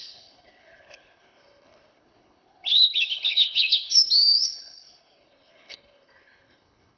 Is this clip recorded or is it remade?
remade